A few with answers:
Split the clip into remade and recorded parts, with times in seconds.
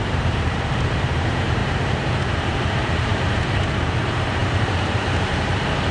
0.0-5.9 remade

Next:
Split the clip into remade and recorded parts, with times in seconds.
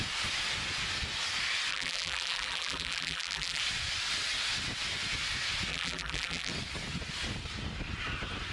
0.0-1.7 recorded; 1.7-3.6 remade; 3.6-5.7 recorded; 5.7-6.5 remade; 6.5-8.5 recorded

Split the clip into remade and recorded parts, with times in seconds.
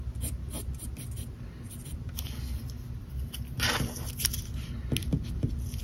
0.0-0.6 recorded; 0.6-4.1 remade; 4.1-5.0 recorded; 5.0-5.8 remade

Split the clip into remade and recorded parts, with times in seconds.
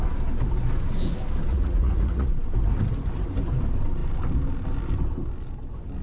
0.0-1.5 recorded; 1.5-2.3 remade; 2.3-6.0 recorded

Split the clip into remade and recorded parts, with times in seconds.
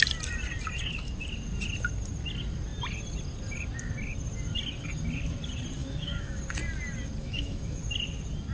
0.0-5.8 recorded; 5.8-6.4 remade; 6.4-7.2 recorded; 7.2-7.8 remade; 7.8-8.5 recorded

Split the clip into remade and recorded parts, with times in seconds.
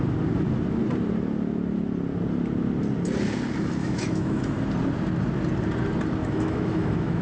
0.0-3.8 recorded; 3.8-4.4 remade; 4.4-6.2 recorded; 6.2-7.2 remade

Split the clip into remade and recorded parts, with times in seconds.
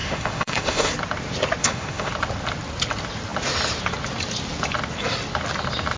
0.0-0.9 remade; 0.9-1.6 recorded; 1.6-2.1 remade; 2.1-6.0 recorded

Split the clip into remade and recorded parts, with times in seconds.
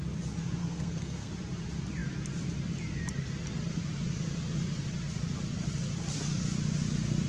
0.0-0.6 recorded; 0.6-1.3 remade; 1.3-7.3 recorded